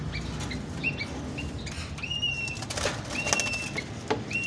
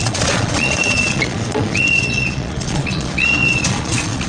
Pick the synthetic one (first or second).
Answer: second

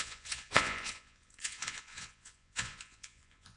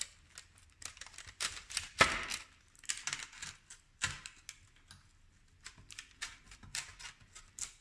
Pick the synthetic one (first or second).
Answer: first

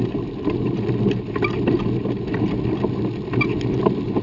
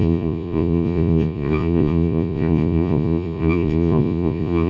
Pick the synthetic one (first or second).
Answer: second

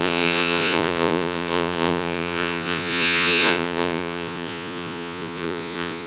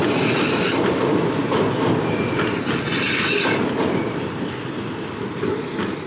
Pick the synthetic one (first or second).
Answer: first